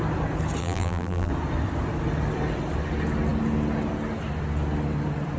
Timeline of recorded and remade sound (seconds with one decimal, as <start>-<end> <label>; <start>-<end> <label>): 0.0-0.6 recorded; 0.6-1.3 remade; 1.3-5.4 recorded